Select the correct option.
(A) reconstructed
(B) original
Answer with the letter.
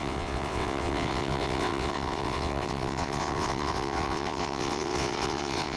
A